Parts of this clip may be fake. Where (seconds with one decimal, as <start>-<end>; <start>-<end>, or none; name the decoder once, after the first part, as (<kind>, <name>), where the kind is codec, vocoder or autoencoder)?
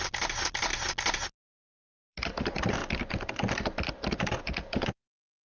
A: 0.0-0.7 (vocoder, BigVGAN v2); 2.0-2.8; 4.1-5.4